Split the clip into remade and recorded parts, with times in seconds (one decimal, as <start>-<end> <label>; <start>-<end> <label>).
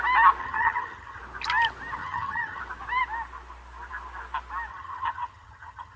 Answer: 0.0-0.4 recorded; 0.4-1.2 remade; 1.2-2.0 recorded; 2.0-2.6 remade; 2.6-4.7 recorded; 4.7-6.0 remade